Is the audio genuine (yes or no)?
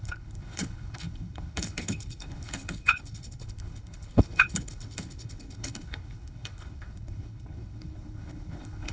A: no